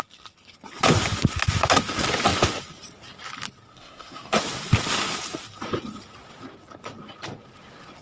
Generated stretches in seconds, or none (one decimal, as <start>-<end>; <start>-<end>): 3.7-4.4